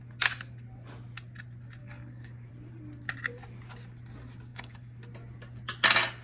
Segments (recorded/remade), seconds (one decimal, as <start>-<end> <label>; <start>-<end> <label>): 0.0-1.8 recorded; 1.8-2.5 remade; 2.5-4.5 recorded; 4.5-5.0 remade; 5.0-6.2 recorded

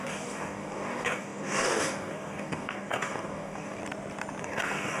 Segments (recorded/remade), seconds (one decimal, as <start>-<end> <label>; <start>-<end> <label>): 0.0-3.8 remade; 3.8-4.4 recorded; 4.4-5.0 remade

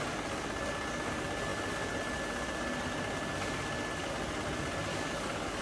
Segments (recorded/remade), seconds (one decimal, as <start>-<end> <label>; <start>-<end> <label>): 0.0-4.9 recorded; 4.9-5.6 remade

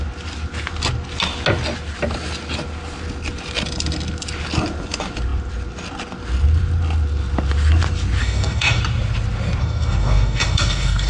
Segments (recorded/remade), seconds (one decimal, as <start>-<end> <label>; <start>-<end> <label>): 0.0-8.2 recorded; 8.2-8.8 remade; 8.8-9.6 recorded; 9.6-11.1 remade

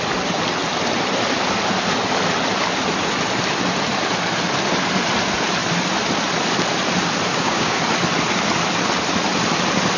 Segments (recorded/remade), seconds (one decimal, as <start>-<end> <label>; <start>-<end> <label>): 0.0-7.3 recorded; 7.3-7.8 remade; 7.8-10.0 recorded